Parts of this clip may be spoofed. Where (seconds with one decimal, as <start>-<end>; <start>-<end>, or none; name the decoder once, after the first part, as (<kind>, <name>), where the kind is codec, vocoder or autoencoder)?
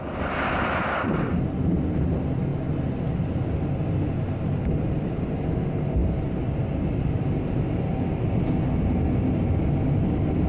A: 6.0-7.1 (vocoder, BigVGAN v2); 7.9-8.4